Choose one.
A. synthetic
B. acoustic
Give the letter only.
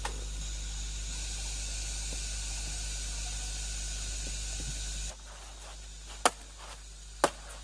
B